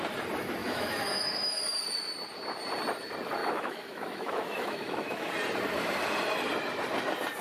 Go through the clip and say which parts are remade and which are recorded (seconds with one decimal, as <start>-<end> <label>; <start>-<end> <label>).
0.0-0.6 recorded; 0.6-1.6 remade; 1.6-3.4 recorded; 3.4-5.3 remade; 5.3-7.4 recorded